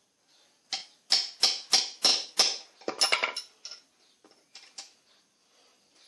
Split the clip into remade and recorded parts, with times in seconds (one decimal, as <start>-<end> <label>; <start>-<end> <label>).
0.0-6.1 recorded